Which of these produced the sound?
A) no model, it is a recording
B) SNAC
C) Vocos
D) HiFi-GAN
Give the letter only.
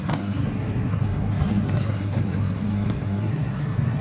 B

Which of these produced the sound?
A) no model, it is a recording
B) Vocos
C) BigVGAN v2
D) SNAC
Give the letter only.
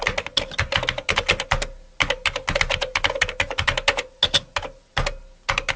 A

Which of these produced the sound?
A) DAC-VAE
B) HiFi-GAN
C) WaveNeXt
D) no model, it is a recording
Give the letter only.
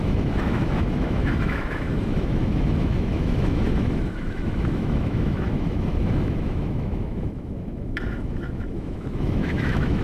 A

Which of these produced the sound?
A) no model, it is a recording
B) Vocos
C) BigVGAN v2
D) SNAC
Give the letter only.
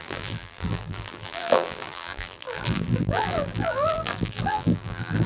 C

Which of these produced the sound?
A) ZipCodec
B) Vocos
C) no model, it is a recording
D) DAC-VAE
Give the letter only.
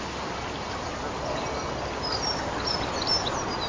C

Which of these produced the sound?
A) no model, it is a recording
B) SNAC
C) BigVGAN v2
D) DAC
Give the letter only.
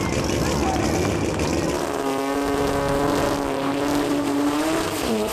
A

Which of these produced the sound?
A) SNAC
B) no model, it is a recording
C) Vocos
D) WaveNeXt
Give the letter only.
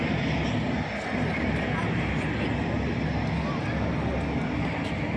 B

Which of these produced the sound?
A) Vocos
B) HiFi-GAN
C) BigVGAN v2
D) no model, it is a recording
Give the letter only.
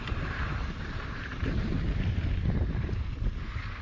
C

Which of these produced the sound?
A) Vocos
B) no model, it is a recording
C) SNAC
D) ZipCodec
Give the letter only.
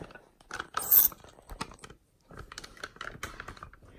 B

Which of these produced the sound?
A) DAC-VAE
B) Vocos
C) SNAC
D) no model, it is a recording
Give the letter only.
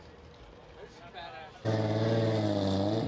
D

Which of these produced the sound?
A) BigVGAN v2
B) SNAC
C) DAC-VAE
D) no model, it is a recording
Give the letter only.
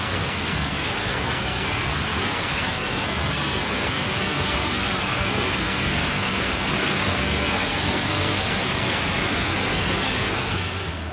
B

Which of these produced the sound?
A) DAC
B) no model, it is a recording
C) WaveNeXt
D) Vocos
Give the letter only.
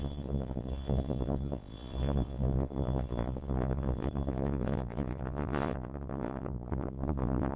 D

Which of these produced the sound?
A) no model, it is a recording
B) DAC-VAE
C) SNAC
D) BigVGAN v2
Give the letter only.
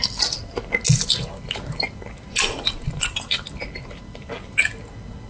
A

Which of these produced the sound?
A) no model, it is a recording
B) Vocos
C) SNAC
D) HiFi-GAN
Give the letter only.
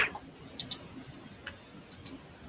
A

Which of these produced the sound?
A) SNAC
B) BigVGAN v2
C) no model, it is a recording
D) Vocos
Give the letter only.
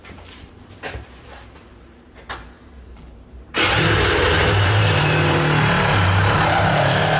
B